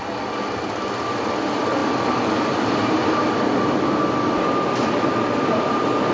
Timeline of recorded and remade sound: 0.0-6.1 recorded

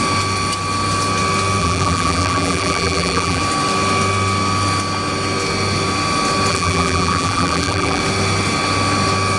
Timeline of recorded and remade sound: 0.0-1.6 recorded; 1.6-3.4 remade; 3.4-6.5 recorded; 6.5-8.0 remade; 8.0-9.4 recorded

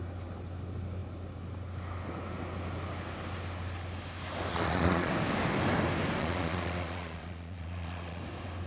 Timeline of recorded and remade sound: 0.0-4.5 recorded; 4.5-5.1 remade; 5.1-6.2 recorded; 6.2-8.2 remade; 8.2-8.7 recorded